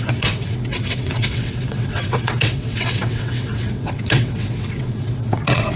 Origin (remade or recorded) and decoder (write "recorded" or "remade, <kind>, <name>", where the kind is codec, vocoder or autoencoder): remade, vocoder, WaveNeXt